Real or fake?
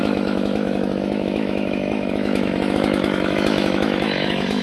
fake